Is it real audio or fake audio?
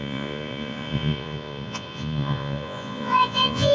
fake